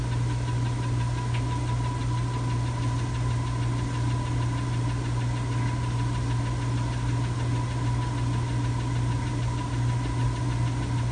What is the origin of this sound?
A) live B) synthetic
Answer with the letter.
A